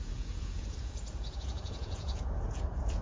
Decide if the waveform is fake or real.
fake